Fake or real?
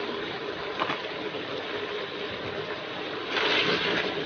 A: real